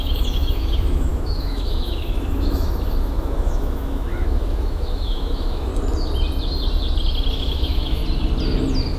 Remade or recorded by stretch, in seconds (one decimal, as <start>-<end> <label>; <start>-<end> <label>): 0.0-5.7 remade; 5.7-7.3 recorded; 7.3-8.0 remade; 8.0-9.0 recorded